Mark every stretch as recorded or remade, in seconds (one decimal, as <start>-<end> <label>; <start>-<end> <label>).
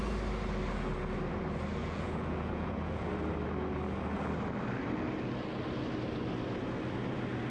0.0-1.8 recorded; 1.8-3.1 remade; 3.1-7.5 recorded